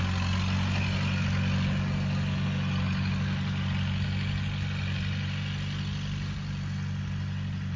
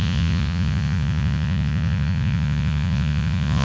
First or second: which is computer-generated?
second